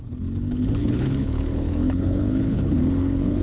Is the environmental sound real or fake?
fake